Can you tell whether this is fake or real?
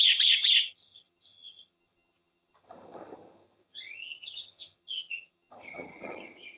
fake